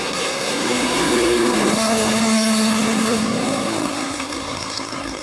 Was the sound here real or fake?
fake